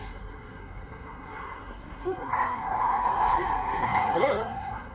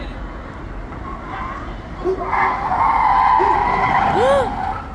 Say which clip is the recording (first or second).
second